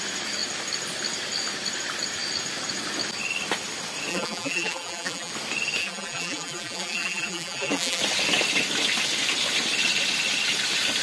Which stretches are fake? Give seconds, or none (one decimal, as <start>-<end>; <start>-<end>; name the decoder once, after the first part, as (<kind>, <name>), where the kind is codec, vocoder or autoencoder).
4.1-5.3 (vocoder, BigVGAN v2); 5.8-8.0